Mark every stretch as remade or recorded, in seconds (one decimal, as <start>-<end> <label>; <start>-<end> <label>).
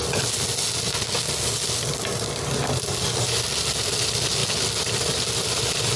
0.0-6.0 recorded